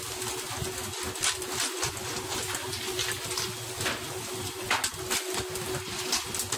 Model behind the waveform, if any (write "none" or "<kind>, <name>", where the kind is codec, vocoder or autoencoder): none